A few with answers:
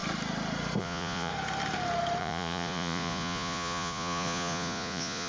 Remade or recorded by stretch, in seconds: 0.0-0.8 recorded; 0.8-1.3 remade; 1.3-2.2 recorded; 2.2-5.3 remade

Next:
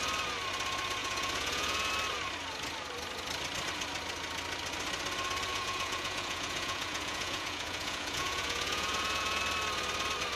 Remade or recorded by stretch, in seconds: 0.0-1.0 recorded; 1.0-1.9 remade; 1.9-5.5 recorded; 5.5-9.4 remade; 9.4-10.4 recorded